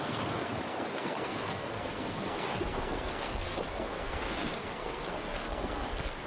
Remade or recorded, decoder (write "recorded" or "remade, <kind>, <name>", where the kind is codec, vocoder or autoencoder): remade, codec, SNAC